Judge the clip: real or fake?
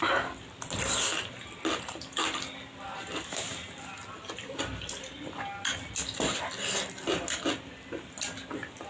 real